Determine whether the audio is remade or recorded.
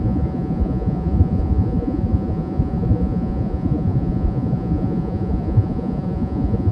remade